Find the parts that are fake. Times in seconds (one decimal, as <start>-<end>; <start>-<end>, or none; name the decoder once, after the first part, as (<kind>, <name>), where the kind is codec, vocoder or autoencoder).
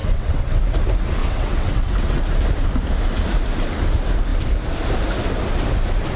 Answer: 0.0-0.6 (vocoder, WaveNeXt); 1.2-2.2